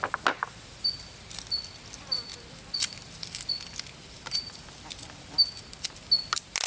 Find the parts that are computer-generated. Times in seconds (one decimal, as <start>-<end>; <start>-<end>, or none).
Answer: none